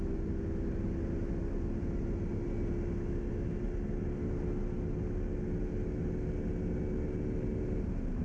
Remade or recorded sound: recorded